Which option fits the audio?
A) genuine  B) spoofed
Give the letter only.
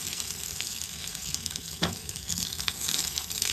B